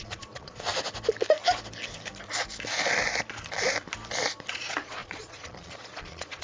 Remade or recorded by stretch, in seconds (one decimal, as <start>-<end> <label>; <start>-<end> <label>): 0.0-0.7 remade; 0.7-4.5 recorded; 4.5-6.4 remade